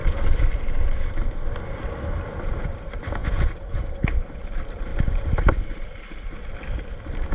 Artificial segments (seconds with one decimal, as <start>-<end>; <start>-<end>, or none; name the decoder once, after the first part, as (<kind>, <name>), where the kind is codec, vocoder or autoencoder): 0.0-3.2 (vocoder, BigVGAN v2); 3.7-4.9; 5.7-7.3